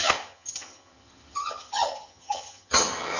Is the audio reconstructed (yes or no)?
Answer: yes